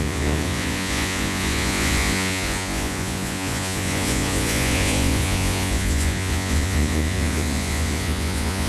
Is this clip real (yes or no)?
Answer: no